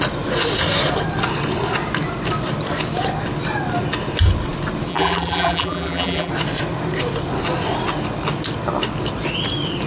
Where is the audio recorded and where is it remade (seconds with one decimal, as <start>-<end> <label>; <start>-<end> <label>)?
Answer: 0.0-4.9 recorded; 4.9-6.3 remade; 6.3-9.9 recorded